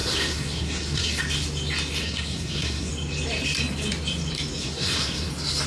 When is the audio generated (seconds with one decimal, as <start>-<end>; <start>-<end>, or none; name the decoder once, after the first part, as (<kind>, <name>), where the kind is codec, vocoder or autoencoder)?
0.0-1.2 (codec, SNAC); 2.0-2.9; 4.6-5.3